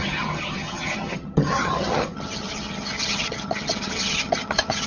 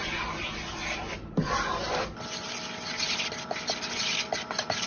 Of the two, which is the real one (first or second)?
second